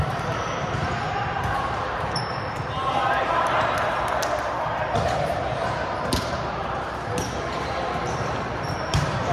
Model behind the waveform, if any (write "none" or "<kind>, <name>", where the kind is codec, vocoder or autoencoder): vocoder, BigVGAN v2